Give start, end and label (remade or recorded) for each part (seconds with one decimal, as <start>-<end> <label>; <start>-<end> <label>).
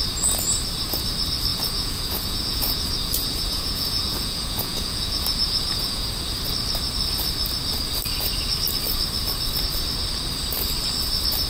0.0-1.5 recorded; 1.5-6.1 remade; 6.1-11.5 recorded